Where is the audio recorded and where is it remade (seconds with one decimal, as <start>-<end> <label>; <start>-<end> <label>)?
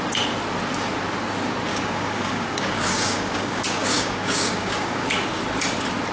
0.0-1.7 recorded; 1.7-5.4 remade; 5.4-6.1 recorded